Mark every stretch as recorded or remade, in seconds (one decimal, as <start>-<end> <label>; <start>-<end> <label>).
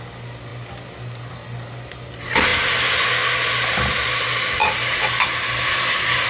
0.0-6.3 recorded